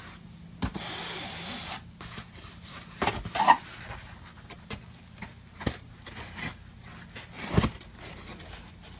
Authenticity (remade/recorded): recorded